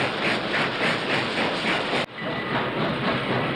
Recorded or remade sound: recorded